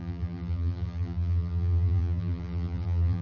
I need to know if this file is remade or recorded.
remade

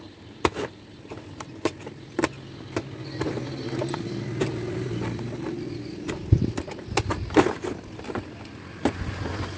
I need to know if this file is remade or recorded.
remade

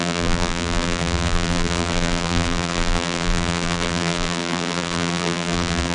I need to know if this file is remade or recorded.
remade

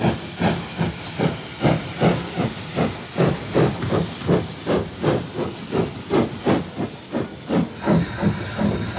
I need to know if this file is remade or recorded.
recorded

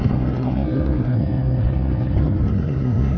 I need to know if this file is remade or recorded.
remade